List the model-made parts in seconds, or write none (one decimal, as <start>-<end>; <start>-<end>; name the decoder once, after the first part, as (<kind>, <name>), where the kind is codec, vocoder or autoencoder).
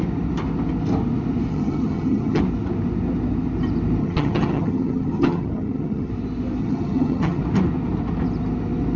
1.5-2.4 (vocoder, HiFi-GAN); 4.0-6.1; 6.6-7.4